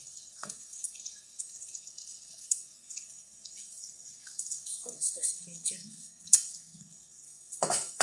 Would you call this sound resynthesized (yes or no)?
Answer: yes